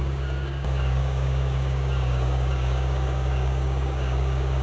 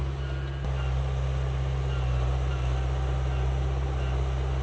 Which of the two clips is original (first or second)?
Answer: second